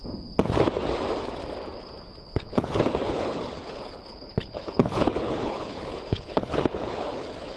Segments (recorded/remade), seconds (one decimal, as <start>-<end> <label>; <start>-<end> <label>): 0.0-2.2 recorded; 2.2-7.6 remade